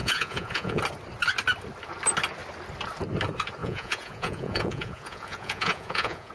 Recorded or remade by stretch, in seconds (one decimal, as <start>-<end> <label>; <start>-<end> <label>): 0.0-0.8 remade; 0.8-3.6 recorded; 3.6-6.3 remade